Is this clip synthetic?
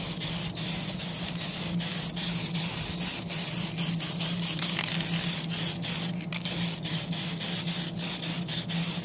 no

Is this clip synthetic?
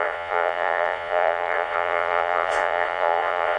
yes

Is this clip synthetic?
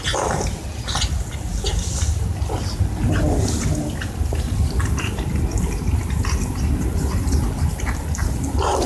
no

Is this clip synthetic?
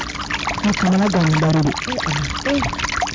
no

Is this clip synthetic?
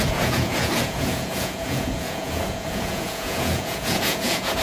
yes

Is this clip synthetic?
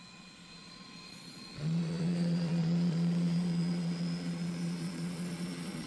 yes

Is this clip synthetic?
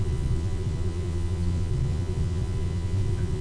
yes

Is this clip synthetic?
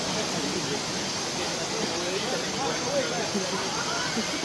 no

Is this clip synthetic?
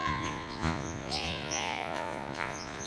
yes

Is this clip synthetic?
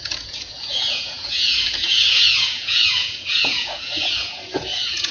yes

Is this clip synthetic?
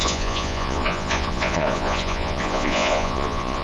yes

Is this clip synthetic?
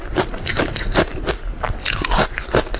no